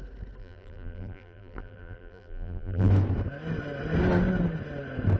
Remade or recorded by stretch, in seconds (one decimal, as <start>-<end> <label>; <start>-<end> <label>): 0.0-0.4 recorded; 0.4-2.9 remade; 2.9-5.2 recorded